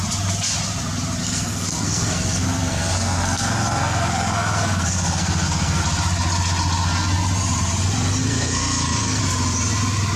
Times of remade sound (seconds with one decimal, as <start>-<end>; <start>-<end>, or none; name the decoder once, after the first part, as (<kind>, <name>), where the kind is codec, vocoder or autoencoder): 1.2-5.8 (codec, SNAC); 8.2-9.2